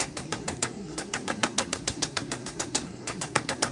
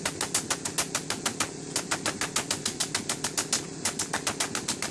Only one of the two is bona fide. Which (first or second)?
second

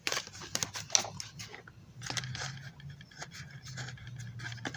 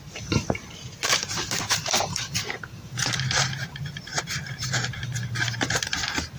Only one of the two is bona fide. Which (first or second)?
first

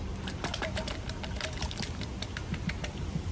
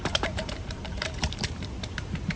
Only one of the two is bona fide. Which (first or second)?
first